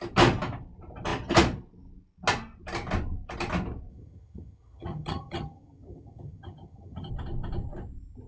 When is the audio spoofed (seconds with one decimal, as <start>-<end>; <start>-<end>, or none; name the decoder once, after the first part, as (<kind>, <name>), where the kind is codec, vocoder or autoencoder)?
3.9-7.1 (vocoder, HiFi-GAN)